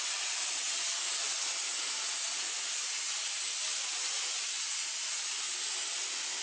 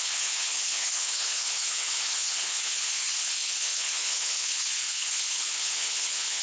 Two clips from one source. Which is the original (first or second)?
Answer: first